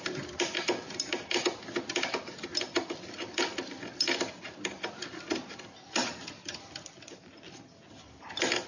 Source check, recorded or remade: recorded